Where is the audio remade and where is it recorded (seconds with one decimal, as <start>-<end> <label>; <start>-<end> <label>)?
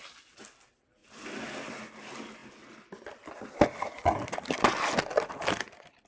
0.0-6.1 recorded